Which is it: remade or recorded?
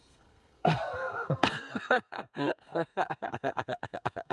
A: remade